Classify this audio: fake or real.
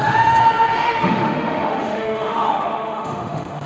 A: fake